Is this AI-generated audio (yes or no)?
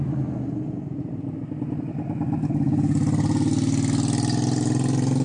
no